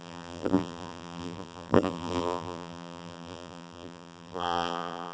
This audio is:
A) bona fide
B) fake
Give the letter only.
B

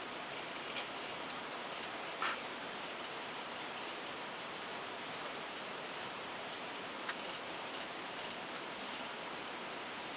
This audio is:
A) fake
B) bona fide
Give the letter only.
A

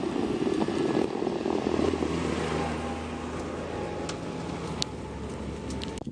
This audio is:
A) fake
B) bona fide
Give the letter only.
B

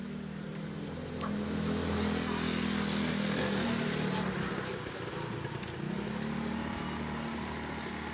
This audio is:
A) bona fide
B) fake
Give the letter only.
A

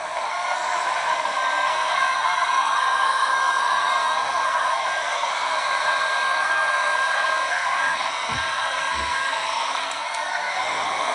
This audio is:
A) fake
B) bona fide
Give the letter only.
A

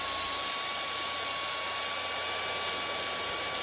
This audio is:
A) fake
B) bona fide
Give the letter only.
B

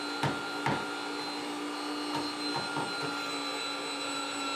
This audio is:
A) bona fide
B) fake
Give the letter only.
A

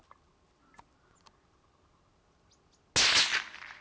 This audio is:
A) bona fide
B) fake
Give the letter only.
A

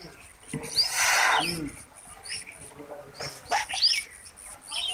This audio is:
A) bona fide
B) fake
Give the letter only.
A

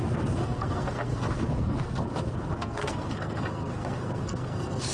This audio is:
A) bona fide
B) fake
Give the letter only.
B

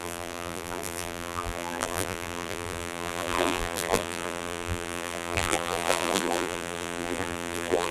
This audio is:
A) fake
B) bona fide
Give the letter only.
A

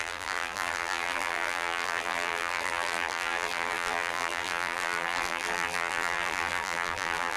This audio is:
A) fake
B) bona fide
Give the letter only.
A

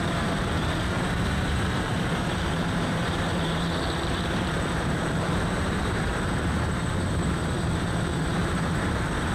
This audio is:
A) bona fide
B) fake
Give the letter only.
B